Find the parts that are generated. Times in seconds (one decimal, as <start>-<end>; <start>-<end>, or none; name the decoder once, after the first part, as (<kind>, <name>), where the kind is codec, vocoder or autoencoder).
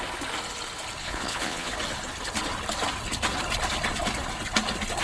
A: 1.0-1.7 (vocoder, Vocos)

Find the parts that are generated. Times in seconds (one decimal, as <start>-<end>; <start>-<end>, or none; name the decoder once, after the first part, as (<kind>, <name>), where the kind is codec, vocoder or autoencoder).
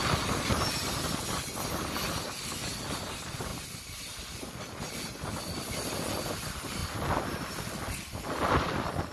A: none